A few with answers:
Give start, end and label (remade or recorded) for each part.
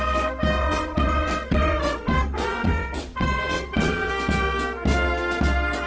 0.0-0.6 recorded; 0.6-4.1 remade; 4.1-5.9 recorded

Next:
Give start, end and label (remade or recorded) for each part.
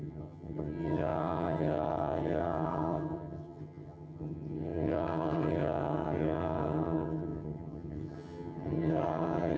0.0-9.6 remade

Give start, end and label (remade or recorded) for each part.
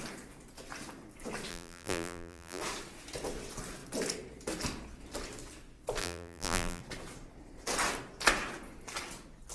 0.0-1.5 recorded; 1.5-2.6 remade; 2.6-6.0 recorded; 6.0-6.8 remade; 6.8-9.5 recorded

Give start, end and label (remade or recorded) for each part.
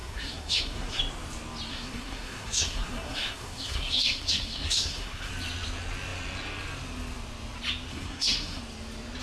0.0-1.0 remade; 1.0-1.7 recorded; 1.7-5.3 remade; 5.3-7.9 recorded; 7.9-8.6 remade; 8.6-9.2 recorded